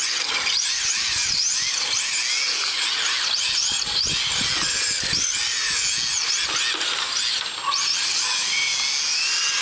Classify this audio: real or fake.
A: real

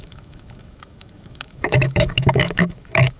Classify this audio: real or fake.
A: fake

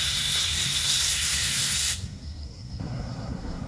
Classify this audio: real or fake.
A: fake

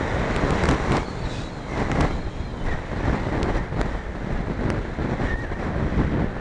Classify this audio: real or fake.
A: real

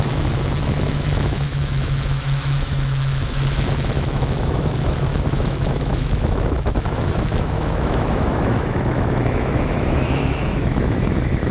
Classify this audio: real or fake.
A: fake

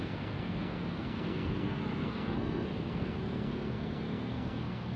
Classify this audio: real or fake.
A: fake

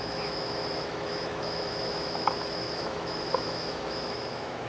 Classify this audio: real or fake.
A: fake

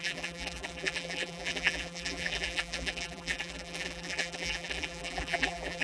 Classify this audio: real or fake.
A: fake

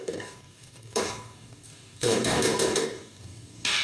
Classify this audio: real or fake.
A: fake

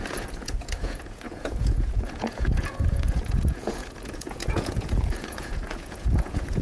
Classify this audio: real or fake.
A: fake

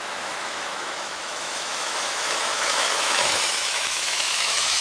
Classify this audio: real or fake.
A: fake